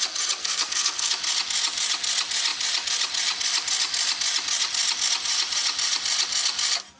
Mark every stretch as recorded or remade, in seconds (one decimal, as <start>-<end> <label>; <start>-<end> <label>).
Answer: 0.0-0.4 recorded; 0.4-1.1 remade; 1.1-7.0 recorded